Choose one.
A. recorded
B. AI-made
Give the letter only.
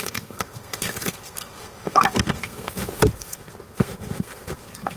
B